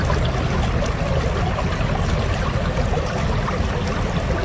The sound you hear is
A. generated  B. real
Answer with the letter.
B